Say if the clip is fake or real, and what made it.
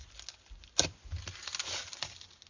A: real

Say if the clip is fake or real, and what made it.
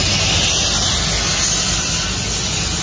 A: real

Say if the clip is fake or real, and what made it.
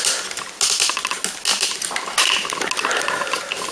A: real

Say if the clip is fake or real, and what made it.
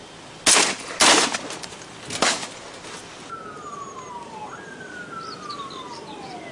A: real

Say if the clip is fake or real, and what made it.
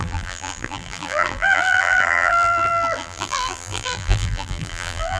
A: fake, vocoder, BigVGAN v2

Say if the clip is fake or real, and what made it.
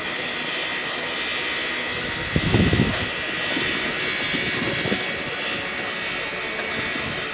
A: real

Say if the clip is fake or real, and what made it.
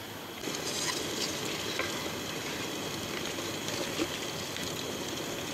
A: real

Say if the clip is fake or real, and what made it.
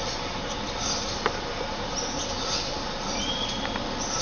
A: real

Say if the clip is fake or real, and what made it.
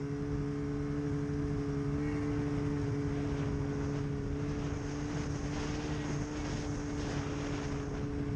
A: real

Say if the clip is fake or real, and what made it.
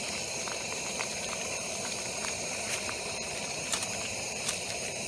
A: fake, vocoder, BigVGAN v2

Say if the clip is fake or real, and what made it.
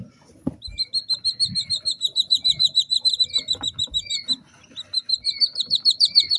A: real